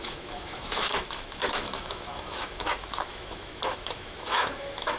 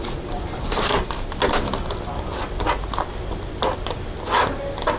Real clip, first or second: second